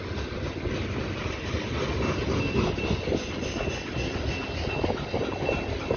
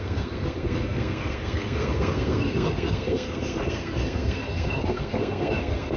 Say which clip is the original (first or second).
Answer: first